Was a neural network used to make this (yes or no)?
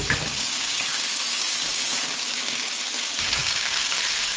yes